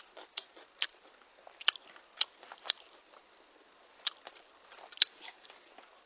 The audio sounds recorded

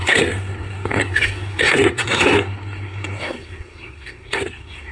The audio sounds remade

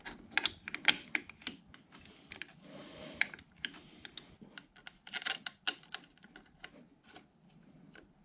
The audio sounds recorded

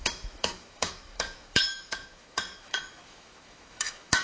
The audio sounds remade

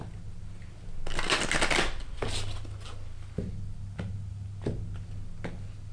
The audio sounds recorded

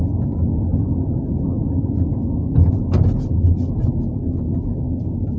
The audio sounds recorded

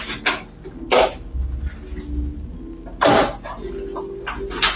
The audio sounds recorded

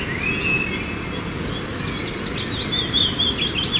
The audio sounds recorded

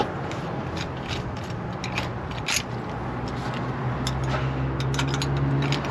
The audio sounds recorded